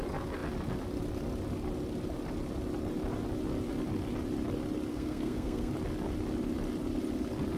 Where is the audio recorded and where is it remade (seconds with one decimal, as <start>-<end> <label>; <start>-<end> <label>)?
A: 0.0-4.9 recorded; 4.9-5.7 remade; 5.7-7.6 recorded